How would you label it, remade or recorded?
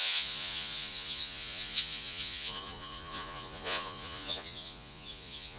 remade